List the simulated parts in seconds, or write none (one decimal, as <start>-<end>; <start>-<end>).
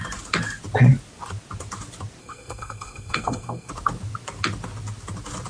2.2-3.7